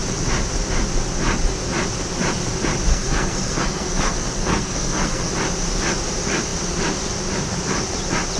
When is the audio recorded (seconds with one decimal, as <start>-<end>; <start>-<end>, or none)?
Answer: 0.0-2.9; 5.3-8.4